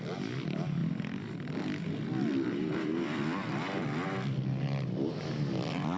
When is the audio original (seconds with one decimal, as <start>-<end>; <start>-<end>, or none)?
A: 0.0-6.0